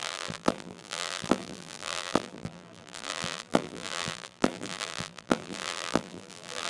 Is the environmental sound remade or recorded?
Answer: remade